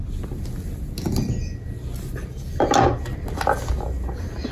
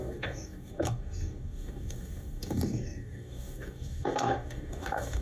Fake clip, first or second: second